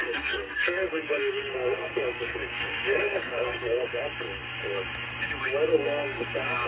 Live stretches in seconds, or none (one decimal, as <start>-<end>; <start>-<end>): 4.0-5.7; 6.3-6.7